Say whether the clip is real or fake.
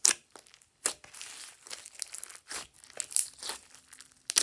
real